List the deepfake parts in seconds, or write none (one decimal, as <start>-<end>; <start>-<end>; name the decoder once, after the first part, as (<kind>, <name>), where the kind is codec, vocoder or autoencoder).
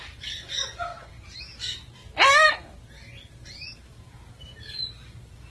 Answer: none